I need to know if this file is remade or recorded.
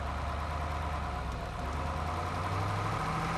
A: recorded